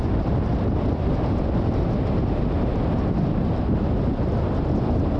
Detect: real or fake real